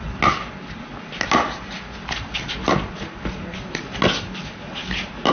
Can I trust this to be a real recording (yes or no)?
yes